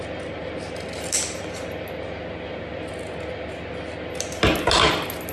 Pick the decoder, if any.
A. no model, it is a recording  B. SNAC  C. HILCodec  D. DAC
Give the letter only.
A